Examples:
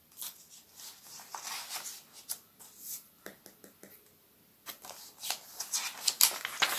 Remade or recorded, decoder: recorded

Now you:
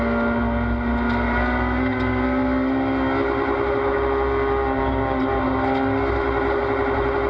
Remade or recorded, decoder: recorded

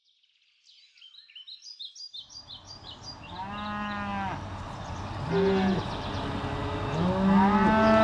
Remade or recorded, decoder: recorded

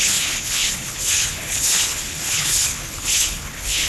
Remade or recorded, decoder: remade, codec, HILCodec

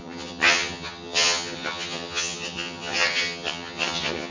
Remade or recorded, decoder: remade, vocoder, HiFi-GAN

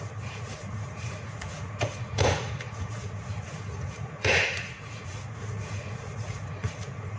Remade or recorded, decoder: remade, vocoder, Vocos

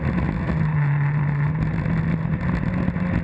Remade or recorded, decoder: recorded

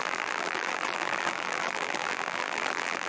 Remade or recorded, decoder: remade, vocoder, BigVGAN v2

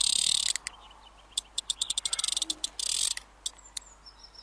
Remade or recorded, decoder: recorded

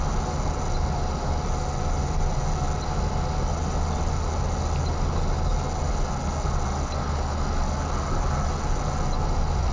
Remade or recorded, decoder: recorded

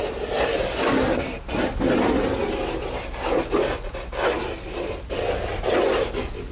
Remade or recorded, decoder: recorded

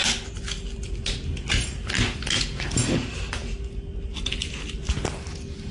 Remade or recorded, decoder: recorded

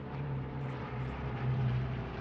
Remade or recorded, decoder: remade, vocoder, BigVGAN v2